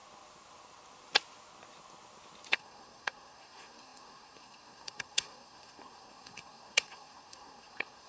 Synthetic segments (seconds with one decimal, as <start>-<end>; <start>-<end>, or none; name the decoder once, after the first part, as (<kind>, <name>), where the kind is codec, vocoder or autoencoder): 2.5-8.1 (codec, SNAC)

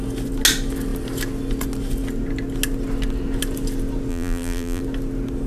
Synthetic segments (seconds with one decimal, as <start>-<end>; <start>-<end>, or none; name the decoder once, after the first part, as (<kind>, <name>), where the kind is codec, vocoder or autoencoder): 4.1-4.8 (vocoder, BigVGAN v2)